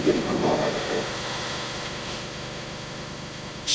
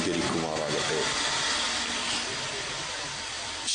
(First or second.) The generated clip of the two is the first